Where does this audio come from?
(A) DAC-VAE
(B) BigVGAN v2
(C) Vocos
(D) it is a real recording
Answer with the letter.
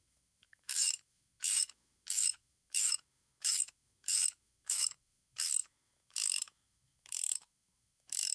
A